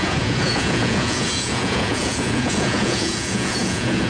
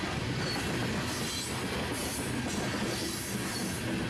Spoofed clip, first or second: first